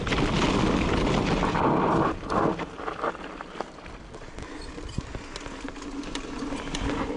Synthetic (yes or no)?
no